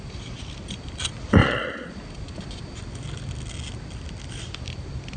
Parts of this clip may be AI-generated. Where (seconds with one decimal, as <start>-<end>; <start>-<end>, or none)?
1.4-1.9